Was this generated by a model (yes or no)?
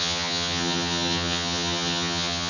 yes